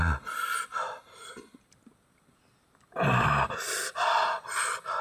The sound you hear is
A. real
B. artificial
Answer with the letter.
A